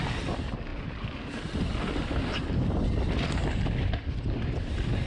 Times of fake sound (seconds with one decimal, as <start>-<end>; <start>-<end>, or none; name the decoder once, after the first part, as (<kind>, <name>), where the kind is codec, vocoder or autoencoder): none